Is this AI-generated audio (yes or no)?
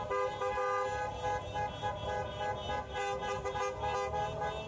no